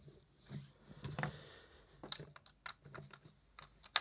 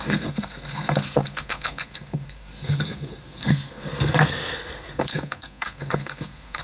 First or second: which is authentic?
first